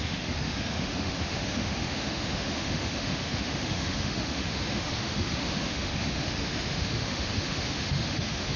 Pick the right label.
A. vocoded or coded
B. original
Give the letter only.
A